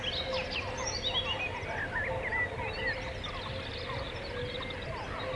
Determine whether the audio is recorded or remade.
recorded